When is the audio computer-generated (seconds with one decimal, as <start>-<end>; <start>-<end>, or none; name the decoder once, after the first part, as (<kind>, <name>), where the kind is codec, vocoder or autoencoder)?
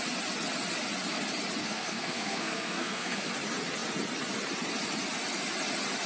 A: 1.6-3.3 (codec, SNAC)